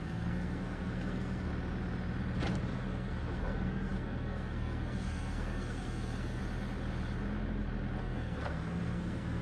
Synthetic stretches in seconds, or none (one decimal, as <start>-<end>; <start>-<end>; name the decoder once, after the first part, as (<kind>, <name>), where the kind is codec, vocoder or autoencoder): 0.0-1.5 (codec, SNAC); 2.7-6.4; 8.0-9.4